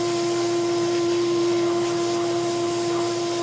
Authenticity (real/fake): fake